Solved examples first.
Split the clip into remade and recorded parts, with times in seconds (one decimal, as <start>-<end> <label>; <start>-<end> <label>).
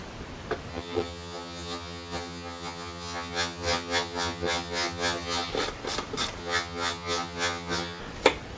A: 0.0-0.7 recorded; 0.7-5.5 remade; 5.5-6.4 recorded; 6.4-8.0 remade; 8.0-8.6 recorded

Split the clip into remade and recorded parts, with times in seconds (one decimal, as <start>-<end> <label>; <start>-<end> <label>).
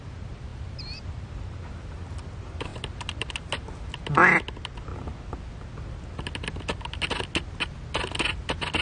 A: 0.0-0.5 recorded; 0.5-1.7 remade; 1.7-2.7 recorded; 2.7-3.3 remade; 3.3-8.8 recorded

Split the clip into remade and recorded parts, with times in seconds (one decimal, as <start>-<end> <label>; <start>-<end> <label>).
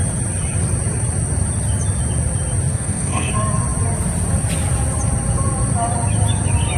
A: 0.0-2.7 recorded; 2.7-3.3 remade; 3.3-6.8 recorded